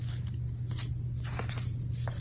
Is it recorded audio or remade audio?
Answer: recorded